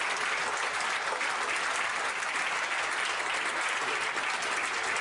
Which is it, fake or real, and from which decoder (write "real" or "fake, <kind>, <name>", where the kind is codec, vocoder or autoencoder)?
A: real